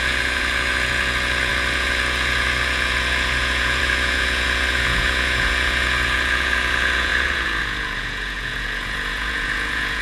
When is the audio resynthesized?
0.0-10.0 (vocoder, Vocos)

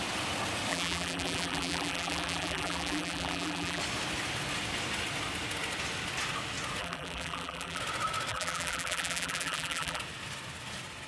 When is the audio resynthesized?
0.7-3.8 (vocoder, BigVGAN v2); 6.8-7.8; 8.3-10.0